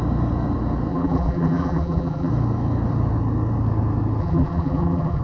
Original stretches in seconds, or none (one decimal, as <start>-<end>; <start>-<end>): 0.0-0.9; 2.3-4.2

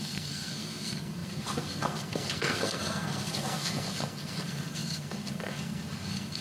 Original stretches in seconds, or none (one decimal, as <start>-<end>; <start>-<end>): none

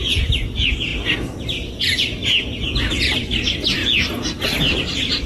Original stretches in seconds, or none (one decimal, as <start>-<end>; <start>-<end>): 0.9-1.8; 2.2-2.9; 3.8-4.6

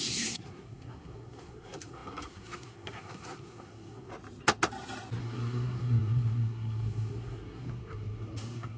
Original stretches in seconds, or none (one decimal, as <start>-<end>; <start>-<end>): 4.1-5.2

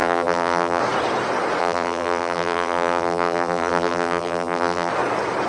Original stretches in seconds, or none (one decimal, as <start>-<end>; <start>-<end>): 0.8-1.6; 4.9-5.5

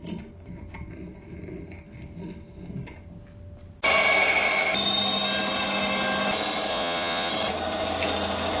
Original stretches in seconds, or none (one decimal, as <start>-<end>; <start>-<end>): 0.0-6.7; 7.3-8.6